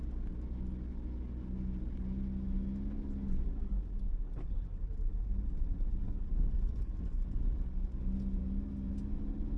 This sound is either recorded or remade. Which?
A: recorded